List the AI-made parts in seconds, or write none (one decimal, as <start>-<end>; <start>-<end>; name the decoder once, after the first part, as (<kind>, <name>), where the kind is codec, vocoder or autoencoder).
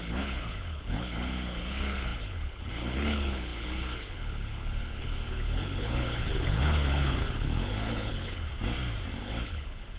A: 0.0-8.5 (codec, HILCodec); 9.2-10.0